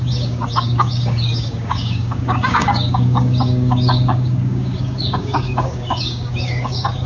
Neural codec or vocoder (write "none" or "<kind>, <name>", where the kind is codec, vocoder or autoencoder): codec, DAC